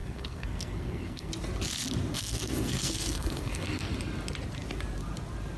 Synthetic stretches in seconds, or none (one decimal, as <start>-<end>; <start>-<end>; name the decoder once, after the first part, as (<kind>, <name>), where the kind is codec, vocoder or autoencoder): 0.0-1.3 (codec, SNAC); 2.1-3.9